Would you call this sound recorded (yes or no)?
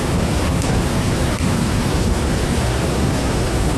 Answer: no